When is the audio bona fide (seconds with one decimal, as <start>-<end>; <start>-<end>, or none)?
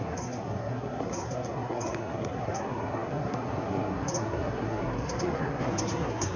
none